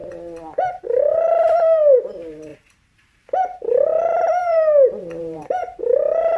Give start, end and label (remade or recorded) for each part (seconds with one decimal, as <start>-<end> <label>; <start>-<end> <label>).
0.0-0.7 recorded; 0.7-6.4 remade